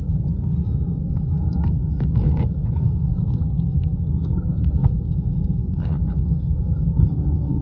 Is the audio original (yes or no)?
no